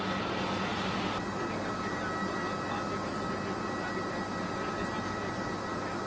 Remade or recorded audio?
recorded